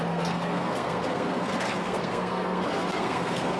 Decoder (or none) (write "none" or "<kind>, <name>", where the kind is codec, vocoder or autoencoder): codec, SNAC